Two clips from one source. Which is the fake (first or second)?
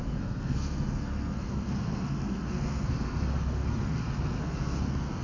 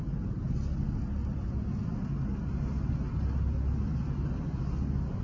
first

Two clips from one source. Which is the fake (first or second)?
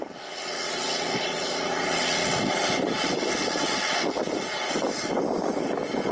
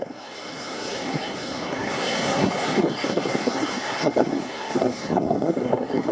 second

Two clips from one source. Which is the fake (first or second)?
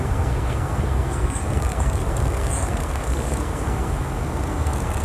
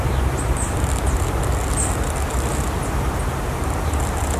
first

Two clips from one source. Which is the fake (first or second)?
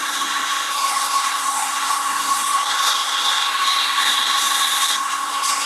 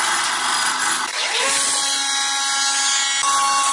first